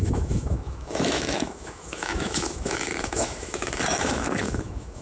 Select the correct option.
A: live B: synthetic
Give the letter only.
B